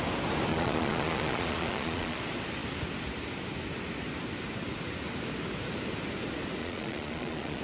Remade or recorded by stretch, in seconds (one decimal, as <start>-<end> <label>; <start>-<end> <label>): 0.0-0.5 recorded; 0.5-2.2 remade; 2.2-6.6 recorded; 6.6-7.6 remade

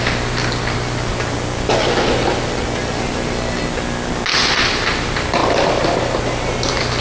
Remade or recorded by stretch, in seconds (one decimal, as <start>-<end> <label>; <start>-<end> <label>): 0.0-7.0 recorded

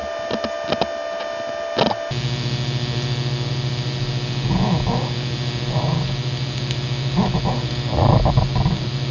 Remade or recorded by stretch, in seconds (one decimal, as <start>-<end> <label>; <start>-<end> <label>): 0.0-9.1 recorded

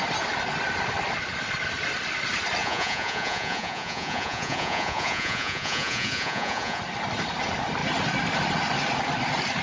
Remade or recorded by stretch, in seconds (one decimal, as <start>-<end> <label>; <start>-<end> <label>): 0.0-2.6 recorded; 2.6-6.8 remade; 6.8-9.6 recorded